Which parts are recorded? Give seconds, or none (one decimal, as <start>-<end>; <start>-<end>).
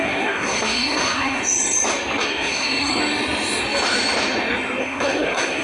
1.4-2.2; 3.0-4.8